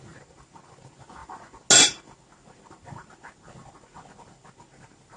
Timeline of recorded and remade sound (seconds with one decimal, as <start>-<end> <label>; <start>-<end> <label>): 0.0-5.2 recorded